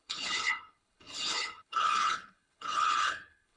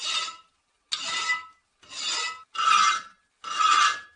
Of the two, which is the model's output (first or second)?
first